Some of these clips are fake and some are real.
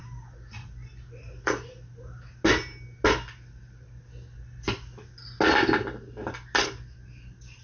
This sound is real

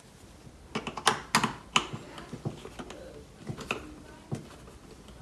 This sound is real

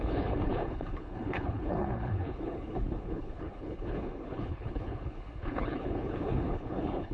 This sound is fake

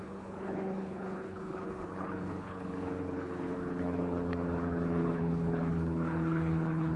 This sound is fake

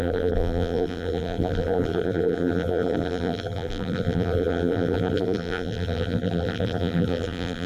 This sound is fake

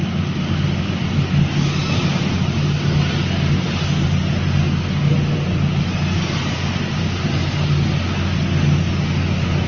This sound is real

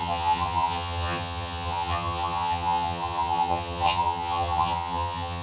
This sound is fake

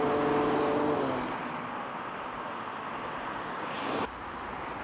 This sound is real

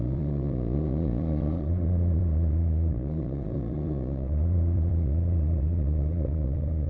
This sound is fake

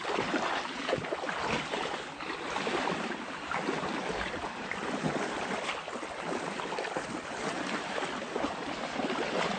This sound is real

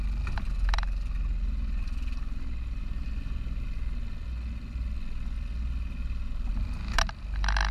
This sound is real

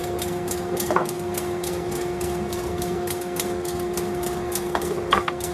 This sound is fake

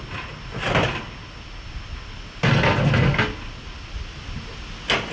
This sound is real